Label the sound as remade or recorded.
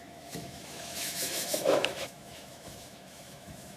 remade